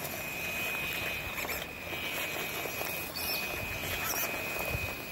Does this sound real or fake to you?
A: real